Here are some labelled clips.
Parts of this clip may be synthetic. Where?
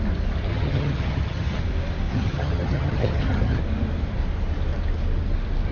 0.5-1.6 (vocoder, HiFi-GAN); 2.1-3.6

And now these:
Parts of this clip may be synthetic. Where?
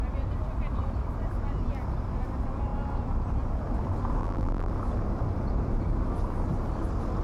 4.2-4.7 (vocoder, BigVGAN v2)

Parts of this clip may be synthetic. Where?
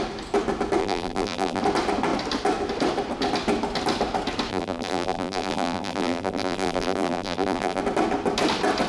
0.8-1.6 (vocoder, BigVGAN v2); 4.5-7.8